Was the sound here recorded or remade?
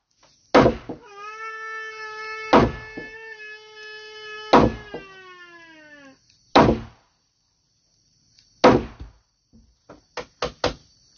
recorded